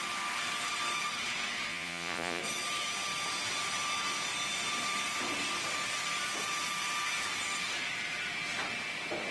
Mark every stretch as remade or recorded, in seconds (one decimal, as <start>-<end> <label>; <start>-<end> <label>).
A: 0.0-1.7 recorded; 1.7-2.4 remade; 2.4-9.3 recorded